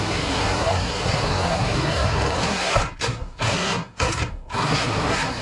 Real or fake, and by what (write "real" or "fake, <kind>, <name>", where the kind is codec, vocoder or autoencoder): fake, codec, SNAC